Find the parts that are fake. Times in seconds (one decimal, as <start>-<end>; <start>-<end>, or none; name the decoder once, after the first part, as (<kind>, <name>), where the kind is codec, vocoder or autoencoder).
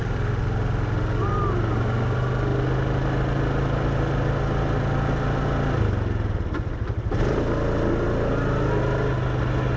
none